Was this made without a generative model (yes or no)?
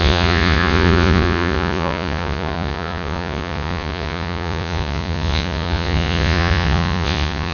no